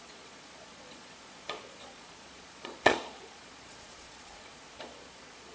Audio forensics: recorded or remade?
remade